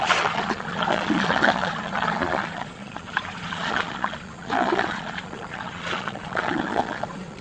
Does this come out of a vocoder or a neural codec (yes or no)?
yes